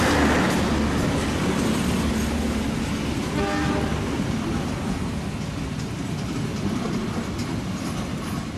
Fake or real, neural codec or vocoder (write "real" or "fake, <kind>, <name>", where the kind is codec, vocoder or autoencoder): real